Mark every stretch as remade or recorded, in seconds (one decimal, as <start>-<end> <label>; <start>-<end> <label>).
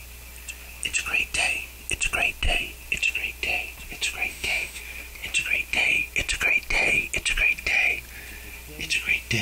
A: 0.0-4.3 recorded; 4.3-4.8 remade; 4.8-9.4 recorded